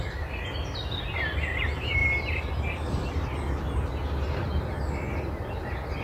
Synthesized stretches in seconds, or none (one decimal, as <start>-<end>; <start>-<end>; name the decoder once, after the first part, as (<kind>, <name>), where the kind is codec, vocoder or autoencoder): none